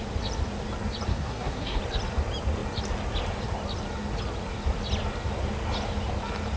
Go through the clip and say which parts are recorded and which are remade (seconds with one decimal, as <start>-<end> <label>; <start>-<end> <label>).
0.0-1.1 recorded; 1.1-1.8 remade; 1.8-6.6 recorded